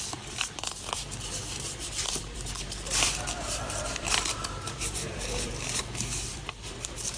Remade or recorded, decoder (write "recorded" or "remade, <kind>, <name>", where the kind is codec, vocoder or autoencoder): remade, vocoder, BigVGAN v2